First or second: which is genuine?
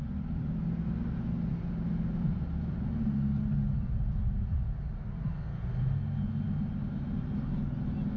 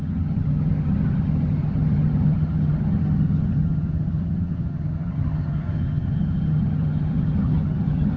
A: first